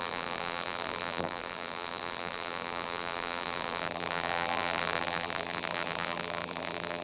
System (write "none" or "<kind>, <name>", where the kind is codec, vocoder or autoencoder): vocoder, BigVGAN v2